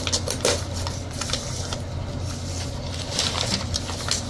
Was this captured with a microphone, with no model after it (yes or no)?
yes